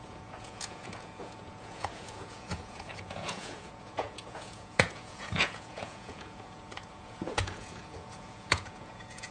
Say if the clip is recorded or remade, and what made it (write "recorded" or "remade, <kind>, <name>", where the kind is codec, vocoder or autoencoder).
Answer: remade, vocoder, Vocos